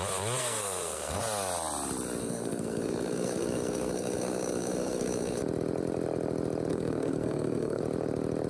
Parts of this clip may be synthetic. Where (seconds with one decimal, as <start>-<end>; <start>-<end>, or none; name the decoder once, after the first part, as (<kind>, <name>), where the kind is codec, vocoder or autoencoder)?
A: 0.4-1.2 (codec, SNAC); 2.2-5.4; 6.7-7.8